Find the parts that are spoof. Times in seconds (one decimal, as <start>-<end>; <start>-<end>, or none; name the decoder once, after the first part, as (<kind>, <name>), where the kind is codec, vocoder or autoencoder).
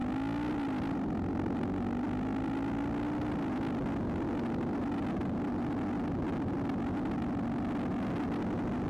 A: none